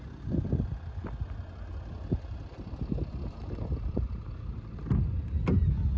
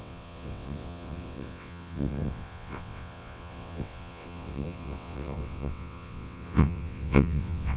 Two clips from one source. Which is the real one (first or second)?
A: first